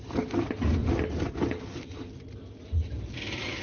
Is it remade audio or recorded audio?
recorded